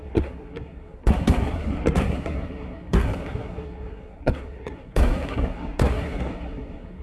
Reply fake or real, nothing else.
fake